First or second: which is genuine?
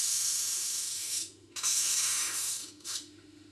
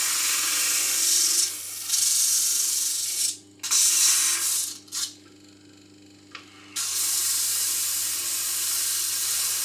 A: second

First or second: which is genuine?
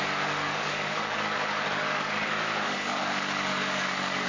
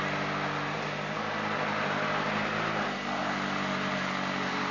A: second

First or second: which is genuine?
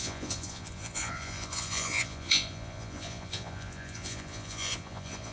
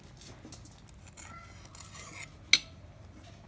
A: second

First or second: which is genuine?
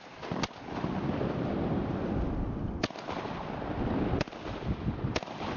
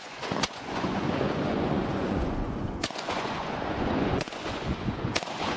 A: first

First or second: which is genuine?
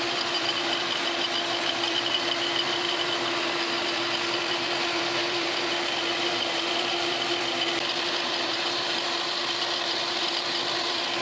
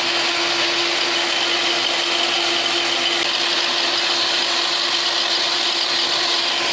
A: second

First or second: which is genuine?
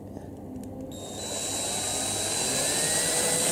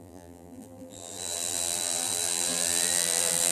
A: first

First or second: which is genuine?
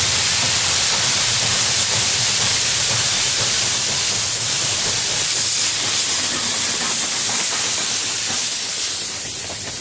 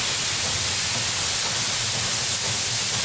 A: second